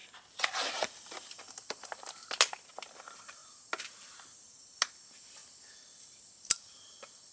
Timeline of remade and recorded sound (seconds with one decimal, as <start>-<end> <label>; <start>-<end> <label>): 0.0-7.3 recorded